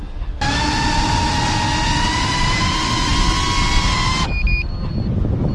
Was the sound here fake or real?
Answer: real